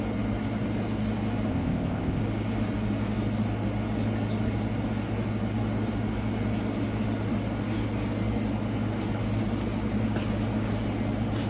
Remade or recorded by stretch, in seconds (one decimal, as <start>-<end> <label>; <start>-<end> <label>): 0.0-1.5 recorded; 1.5-2.2 remade; 2.2-11.5 recorded